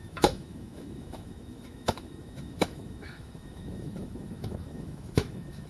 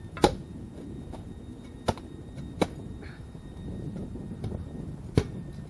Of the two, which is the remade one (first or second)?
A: first